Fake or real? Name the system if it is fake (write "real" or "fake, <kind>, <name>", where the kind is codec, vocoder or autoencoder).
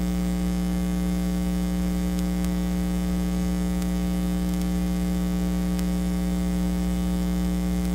fake, autoencoder, DAC-VAE